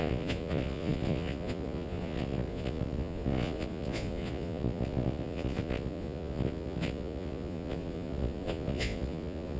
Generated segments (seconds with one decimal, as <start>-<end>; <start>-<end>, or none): 0.0-9.6